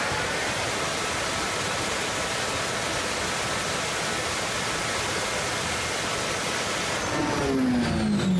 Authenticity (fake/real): real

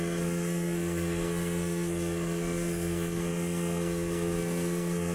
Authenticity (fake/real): fake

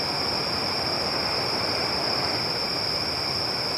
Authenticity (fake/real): real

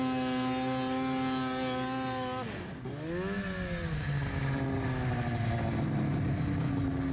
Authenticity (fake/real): real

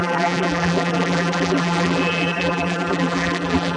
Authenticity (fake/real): fake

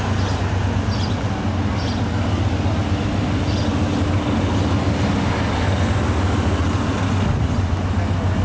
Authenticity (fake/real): real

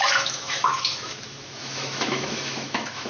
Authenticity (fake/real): fake